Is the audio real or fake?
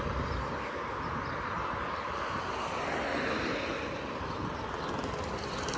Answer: real